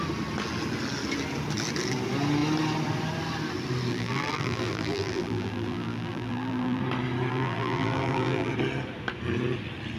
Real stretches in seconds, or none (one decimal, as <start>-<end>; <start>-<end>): 0.0-3.9; 6.8-7.3; 8.5-10.0